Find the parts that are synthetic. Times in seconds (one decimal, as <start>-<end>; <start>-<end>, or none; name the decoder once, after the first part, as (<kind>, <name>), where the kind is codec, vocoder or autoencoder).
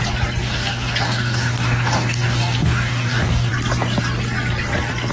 0.4-3.5 (codec, DAC)